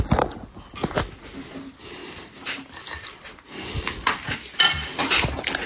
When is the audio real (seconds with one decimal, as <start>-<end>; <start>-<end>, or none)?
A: 0.0-5.7